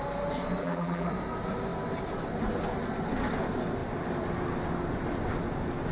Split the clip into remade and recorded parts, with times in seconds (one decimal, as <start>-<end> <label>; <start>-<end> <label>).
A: 0.0-0.6 recorded; 0.6-1.1 remade; 1.1-5.9 recorded